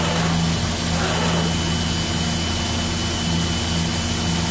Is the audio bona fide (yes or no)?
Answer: yes